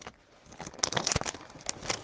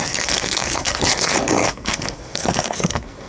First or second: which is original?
first